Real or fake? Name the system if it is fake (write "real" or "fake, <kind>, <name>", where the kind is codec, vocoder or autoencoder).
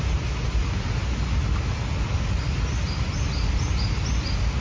real